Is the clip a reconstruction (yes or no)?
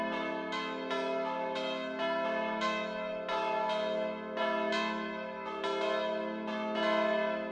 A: no